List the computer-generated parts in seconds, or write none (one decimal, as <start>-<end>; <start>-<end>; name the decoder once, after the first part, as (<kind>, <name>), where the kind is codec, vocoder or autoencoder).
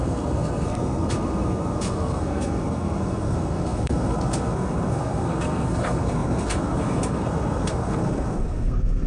0.0-9.1 (codec, SNAC)